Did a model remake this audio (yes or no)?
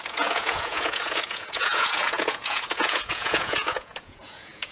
yes